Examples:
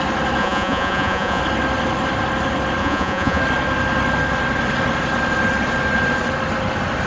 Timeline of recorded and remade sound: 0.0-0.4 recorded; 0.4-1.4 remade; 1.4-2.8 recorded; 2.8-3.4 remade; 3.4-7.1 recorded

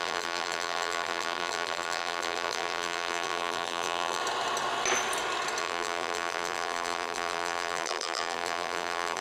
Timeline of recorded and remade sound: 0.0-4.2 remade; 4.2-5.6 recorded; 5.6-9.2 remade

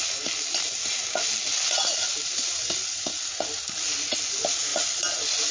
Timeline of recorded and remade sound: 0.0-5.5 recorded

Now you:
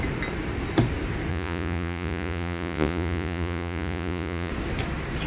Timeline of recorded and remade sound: 0.0-1.3 recorded; 1.3-4.5 remade; 4.5-5.3 recorded

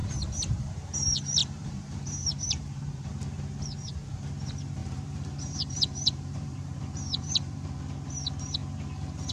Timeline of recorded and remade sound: 0.0-0.7 remade; 0.7-1.4 recorded; 1.4-3.1 remade; 3.1-4.8 recorded; 4.8-7.8 remade; 7.8-9.3 recorded

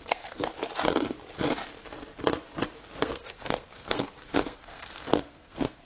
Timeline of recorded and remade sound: 0.0-0.5 remade; 0.5-3.0 recorded; 3.0-5.9 remade